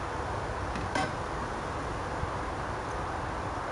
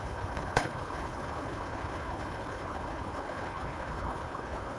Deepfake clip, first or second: second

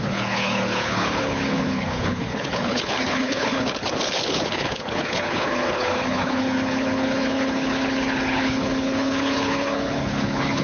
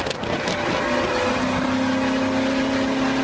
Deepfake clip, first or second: first